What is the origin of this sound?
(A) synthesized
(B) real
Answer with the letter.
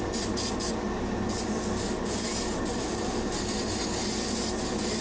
B